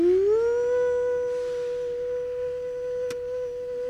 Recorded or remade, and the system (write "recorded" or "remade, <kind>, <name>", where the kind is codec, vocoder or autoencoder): recorded